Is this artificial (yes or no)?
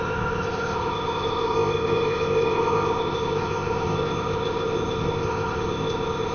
yes